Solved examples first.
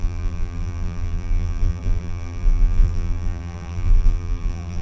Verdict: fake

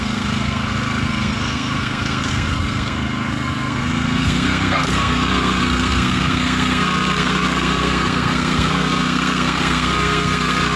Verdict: fake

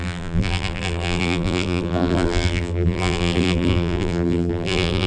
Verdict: fake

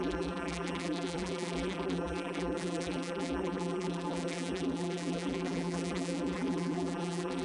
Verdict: fake